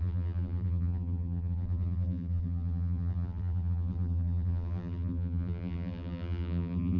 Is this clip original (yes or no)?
no